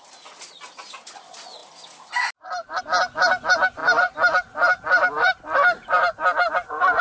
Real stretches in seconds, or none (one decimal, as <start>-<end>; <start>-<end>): 0.0-7.0